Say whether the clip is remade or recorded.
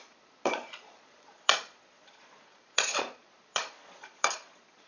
remade